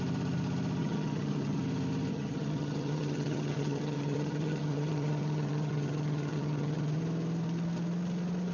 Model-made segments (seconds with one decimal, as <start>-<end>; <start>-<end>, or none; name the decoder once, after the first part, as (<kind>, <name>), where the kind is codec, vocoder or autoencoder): 0.8-1.6 (vocoder, HiFi-GAN); 2.1-7.0

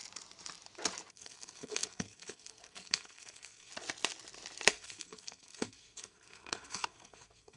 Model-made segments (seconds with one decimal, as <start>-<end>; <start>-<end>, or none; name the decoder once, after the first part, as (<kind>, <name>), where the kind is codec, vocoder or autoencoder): 1.1-3.7 (codec, SNAC); 4.7-7.6

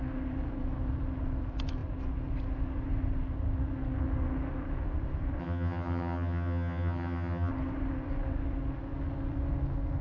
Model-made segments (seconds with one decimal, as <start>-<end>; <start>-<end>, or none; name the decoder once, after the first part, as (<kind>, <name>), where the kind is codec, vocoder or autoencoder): 5.4-7.5 (vocoder, HiFi-GAN)